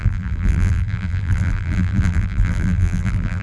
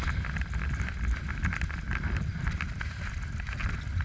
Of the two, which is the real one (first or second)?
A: second